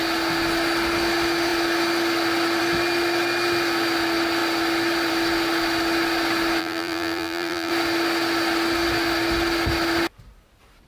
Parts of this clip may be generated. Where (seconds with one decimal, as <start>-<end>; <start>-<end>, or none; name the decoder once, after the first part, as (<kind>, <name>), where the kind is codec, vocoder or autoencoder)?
6.6-7.7 (vocoder, BigVGAN v2)